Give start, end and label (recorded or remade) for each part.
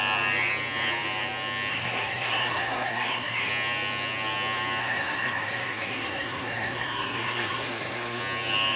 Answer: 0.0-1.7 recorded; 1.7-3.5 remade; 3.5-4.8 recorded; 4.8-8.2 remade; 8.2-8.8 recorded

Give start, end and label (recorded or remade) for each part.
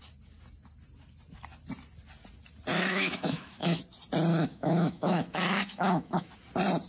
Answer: 0.0-2.7 recorded; 2.7-3.8 remade; 3.8-4.3 recorded; 4.3-6.3 remade; 6.3-6.9 recorded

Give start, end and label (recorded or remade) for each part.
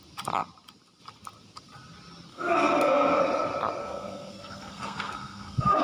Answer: 0.0-2.3 recorded; 2.3-3.2 remade; 3.2-3.8 recorded; 3.8-5.8 remade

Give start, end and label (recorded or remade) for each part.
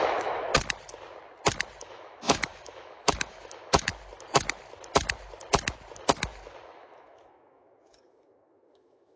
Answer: 0.0-0.5 remade; 0.5-1.8 recorded; 1.8-3.9 remade; 3.9-6.7 recorded; 6.7-9.2 remade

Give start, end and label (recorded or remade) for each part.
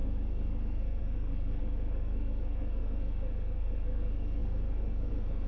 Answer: 0.0-5.5 remade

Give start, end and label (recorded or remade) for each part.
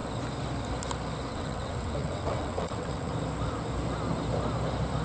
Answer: 0.0-1.3 recorded; 1.3-3.1 remade; 3.1-5.0 recorded